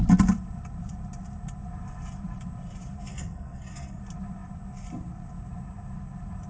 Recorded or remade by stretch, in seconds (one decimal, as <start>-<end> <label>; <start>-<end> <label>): 0.0-3.1 recorded; 3.1-4.0 remade; 4.0-6.5 recorded